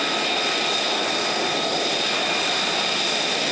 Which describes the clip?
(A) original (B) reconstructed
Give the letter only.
B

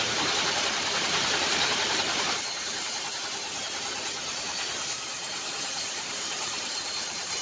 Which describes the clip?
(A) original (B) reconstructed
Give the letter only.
B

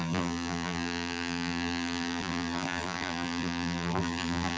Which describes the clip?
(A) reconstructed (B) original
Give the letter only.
A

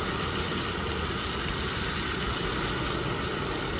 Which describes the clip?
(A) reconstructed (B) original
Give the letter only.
B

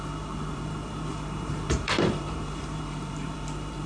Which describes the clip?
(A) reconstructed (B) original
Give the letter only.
A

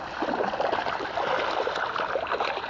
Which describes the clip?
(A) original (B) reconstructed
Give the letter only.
B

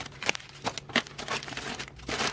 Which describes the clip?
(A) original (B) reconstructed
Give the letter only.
A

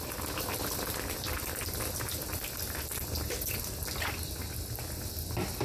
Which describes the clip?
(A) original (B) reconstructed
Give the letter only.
B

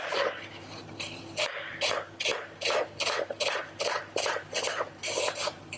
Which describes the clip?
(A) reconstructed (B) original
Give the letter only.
A